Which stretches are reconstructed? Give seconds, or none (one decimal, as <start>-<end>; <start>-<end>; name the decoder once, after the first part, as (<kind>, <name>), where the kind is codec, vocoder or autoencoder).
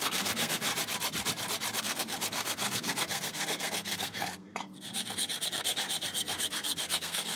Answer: 0.0-0.7 (codec, SNAC); 1.8-7.4